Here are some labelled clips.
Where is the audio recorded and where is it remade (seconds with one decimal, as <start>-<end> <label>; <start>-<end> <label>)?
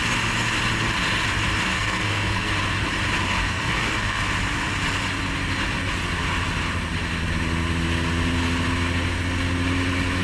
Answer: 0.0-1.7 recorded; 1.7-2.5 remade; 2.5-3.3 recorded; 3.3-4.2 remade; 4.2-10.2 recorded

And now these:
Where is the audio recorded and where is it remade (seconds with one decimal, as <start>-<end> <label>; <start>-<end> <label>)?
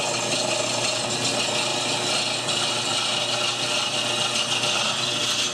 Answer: 0.0-5.5 recorded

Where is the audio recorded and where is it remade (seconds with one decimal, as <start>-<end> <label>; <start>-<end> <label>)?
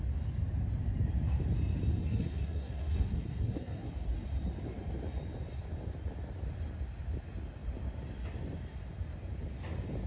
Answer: 0.0-2.0 recorded; 2.0-3.9 remade; 3.9-10.1 recorded